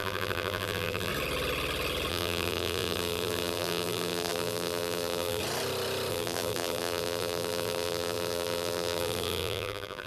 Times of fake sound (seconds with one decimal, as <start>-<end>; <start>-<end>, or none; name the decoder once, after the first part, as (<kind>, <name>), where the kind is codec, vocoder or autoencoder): 0.0-1.1 (vocoder, BigVGAN v2); 2.1-5.4; 6.1-10.1

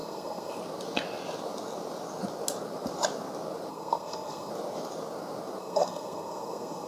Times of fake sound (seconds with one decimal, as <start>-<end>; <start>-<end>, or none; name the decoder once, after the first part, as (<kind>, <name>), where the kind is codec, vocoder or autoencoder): 0.0-0.6 (codec, SNAC); 3.7-4.5; 5.6-6.9

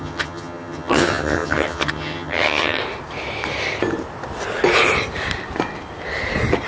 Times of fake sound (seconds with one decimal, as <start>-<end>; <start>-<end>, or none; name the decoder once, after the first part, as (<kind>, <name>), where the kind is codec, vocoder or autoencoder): 0.0-2.8 (vocoder, HiFi-GAN)

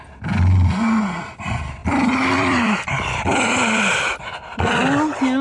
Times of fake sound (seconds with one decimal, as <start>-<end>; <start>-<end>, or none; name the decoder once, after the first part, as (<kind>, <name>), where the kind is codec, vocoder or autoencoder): 1.8-4.1 (vocoder, BigVGAN v2)

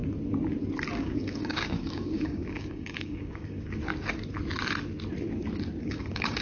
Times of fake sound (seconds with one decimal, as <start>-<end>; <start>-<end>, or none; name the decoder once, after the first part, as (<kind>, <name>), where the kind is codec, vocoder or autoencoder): 1.0-3.8 (codec, DAC); 5.8-6.4

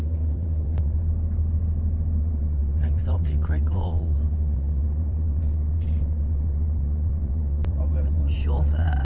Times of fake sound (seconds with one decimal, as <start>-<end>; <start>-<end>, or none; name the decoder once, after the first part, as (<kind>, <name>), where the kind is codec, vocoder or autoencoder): 0.0-1.0 (vocoder, WaveNeXt); 2.2-9.0